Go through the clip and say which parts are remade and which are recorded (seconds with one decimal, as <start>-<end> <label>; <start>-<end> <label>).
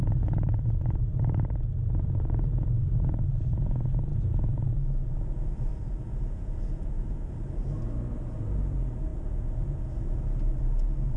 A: 0.0-0.8 remade; 0.8-4.1 recorded; 4.1-4.7 remade; 4.7-5.7 recorded; 5.7-7.3 remade; 7.3-9.1 recorded; 9.1-9.9 remade; 9.9-11.2 recorded